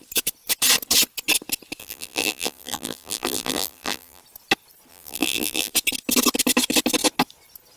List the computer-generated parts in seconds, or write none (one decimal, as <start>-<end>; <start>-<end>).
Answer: 1.8-4.2; 4.9-5.7